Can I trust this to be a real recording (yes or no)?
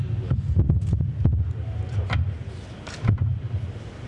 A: no